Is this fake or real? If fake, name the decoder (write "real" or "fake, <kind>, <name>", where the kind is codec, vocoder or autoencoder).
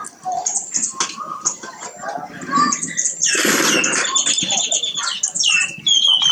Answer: real